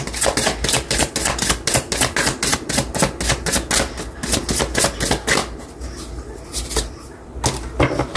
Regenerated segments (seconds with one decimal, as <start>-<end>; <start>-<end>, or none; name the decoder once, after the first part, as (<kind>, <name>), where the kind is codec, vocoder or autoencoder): none